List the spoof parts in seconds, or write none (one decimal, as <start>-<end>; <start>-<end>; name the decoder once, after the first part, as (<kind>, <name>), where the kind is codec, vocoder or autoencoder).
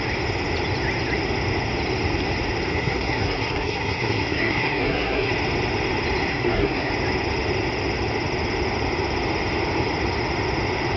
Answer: 2.7-5.3 (codec, SNAC); 6.3-6.9